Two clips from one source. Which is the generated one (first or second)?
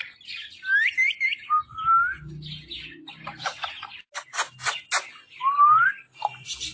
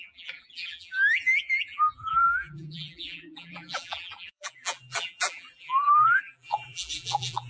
second